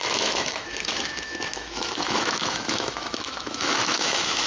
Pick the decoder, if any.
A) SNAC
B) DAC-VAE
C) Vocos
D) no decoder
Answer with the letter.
B